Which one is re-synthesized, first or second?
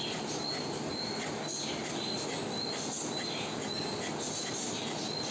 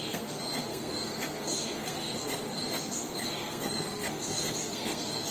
second